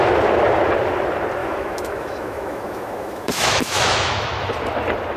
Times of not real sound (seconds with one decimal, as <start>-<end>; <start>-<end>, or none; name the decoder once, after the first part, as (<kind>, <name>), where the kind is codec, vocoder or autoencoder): 1.4-4.5 (autoencoder, DAC-VAE)